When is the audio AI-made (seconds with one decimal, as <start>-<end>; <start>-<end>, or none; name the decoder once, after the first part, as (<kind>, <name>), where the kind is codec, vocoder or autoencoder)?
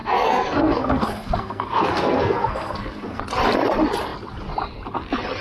0.0-3.2 (codec, SNAC)